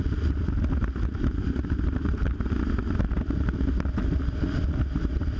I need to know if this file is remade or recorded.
recorded